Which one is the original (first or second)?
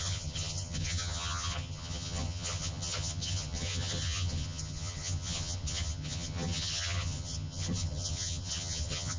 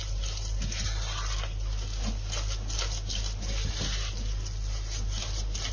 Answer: second